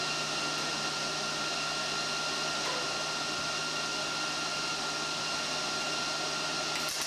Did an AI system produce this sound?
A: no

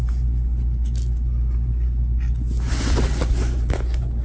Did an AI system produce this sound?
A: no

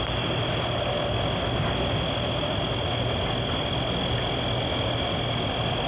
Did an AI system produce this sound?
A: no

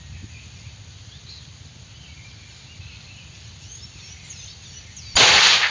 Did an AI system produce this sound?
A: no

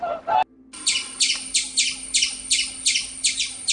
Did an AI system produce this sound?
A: no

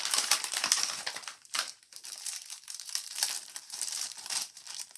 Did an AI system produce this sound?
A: yes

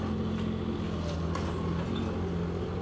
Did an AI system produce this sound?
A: no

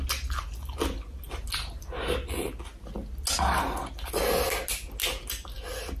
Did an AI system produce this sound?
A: no